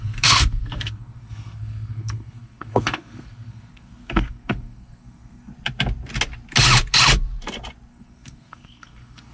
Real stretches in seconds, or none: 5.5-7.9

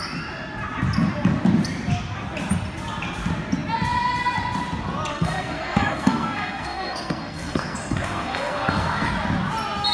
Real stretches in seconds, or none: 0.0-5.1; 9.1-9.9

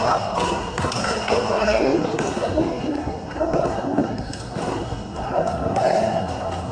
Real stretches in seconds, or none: none